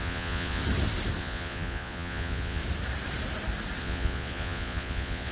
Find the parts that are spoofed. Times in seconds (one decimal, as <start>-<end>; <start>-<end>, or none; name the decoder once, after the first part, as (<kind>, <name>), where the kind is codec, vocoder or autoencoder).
0.0-0.6 (vocoder, Vocos); 1.2-2.6; 3.8-5.3